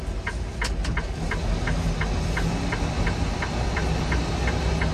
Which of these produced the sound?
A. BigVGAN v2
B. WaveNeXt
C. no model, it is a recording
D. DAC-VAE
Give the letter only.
C